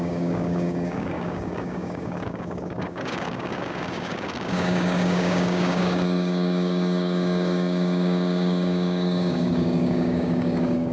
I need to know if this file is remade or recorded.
remade